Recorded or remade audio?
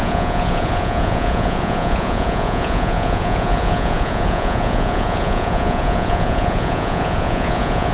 remade